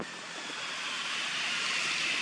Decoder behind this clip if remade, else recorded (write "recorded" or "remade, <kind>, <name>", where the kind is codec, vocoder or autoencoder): recorded